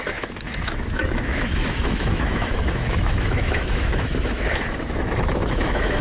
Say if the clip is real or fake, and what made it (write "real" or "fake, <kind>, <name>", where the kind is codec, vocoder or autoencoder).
fake, autoencoder, DAC-VAE